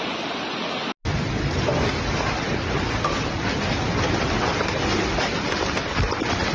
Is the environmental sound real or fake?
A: real